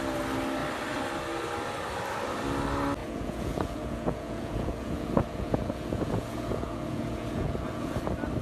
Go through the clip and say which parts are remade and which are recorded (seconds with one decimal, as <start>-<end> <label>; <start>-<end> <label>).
0.0-3.0 recorded; 3.0-8.0 remade; 8.0-8.4 recorded